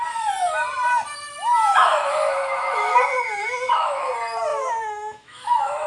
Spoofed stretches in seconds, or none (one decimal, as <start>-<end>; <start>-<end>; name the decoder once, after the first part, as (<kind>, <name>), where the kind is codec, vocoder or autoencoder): 1.7-4.1 (autoencoder, DAC-VAE); 4.5-5.9